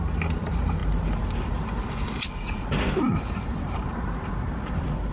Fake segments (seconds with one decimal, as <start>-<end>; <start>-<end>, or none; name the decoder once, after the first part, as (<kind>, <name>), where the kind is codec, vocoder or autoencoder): none